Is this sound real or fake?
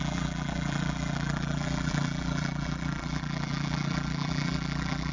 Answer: fake